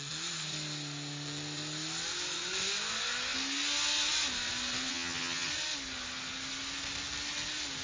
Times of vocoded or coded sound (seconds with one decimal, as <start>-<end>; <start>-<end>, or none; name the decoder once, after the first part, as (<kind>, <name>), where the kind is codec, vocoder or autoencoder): 4.9-5.5 (vocoder, HiFi-GAN)